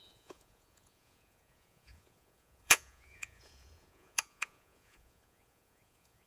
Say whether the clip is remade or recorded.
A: remade